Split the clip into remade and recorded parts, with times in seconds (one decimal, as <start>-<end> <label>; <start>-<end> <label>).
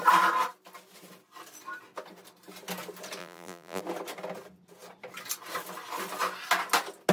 0.0-3.2 recorded; 3.2-3.8 remade; 3.8-7.1 recorded